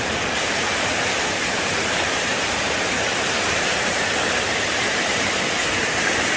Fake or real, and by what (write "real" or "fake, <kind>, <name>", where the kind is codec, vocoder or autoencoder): fake, vocoder, BigVGAN v2